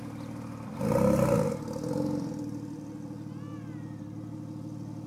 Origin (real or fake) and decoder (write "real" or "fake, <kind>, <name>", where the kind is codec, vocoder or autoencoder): real